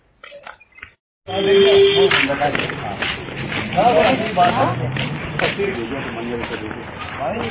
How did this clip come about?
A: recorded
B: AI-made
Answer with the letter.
A